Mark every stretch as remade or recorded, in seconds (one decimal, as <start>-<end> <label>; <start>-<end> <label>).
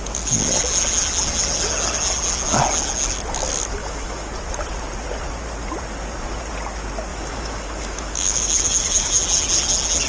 0.0-3.8 recorded; 3.8-4.3 remade; 4.3-7.1 recorded; 7.1-9.2 remade; 9.2-10.1 recorded